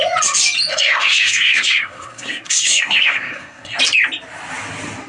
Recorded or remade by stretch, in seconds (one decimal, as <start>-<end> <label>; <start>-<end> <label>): 0.0-0.7 recorded; 0.7-3.8 remade; 3.8-5.1 recorded